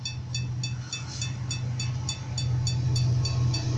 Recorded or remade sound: recorded